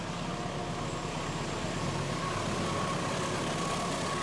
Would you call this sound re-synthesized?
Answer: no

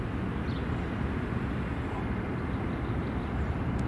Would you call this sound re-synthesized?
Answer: no